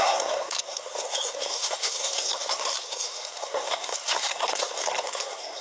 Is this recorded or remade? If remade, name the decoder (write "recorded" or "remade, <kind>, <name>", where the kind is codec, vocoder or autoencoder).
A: remade, codec, SNAC